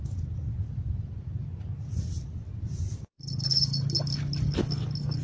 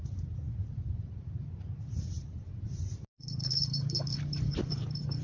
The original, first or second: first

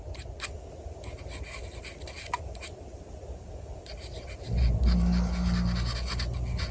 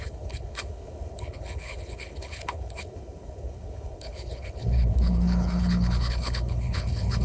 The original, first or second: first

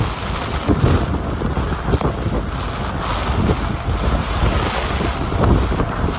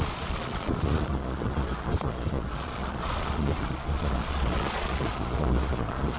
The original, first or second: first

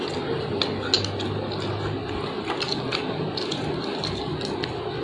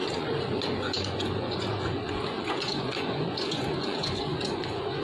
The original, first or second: first